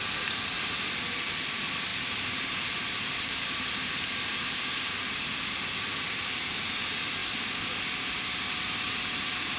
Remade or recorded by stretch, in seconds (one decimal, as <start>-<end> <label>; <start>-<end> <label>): 0.0-1.9 recorded; 1.9-4.9 remade; 4.9-9.6 recorded